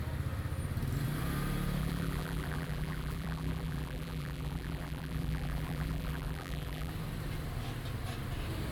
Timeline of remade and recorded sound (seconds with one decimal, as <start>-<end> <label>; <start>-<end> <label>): 0.0-1.8 recorded; 1.8-6.9 remade; 6.9-8.7 recorded